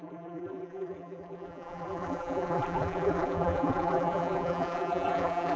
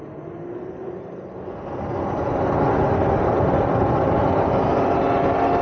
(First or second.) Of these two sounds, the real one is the second